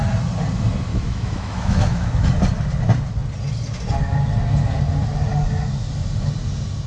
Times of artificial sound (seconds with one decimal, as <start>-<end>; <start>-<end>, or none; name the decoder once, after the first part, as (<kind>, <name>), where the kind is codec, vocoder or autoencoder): 0.9-2.3 (autoencoder, DAC-VAE)